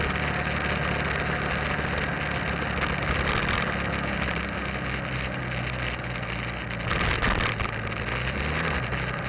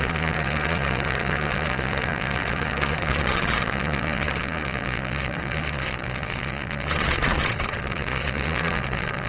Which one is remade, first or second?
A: second